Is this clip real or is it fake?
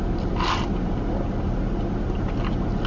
real